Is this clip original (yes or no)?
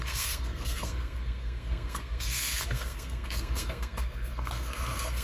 no